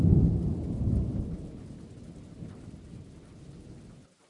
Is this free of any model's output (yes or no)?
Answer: yes